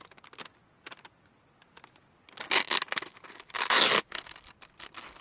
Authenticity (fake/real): real